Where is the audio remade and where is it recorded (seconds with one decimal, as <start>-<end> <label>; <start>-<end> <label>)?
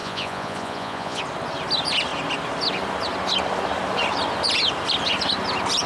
0.0-1.2 remade; 1.2-5.9 recorded